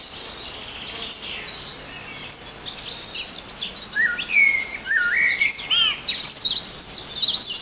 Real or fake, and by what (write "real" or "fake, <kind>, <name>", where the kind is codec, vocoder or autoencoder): real